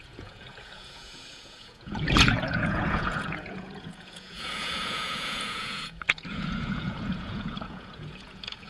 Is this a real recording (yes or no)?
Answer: no